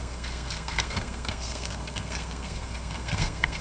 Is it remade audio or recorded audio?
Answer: remade